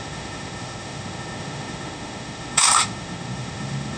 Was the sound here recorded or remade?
remade